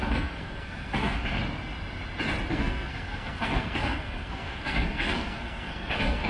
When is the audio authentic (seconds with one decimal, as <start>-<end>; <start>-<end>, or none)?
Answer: 1.4-2.5

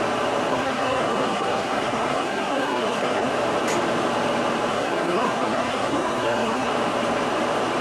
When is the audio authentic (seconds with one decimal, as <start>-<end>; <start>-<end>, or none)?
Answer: 0.0-0.5; 3.3-4.7; 6.7-7.8

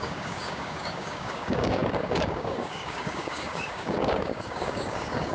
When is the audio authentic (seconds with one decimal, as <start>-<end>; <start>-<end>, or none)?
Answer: none

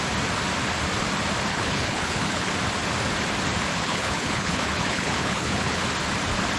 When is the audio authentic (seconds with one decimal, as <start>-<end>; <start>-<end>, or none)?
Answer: 0.0-1.5; 2.5-3.7; 5.8-6.6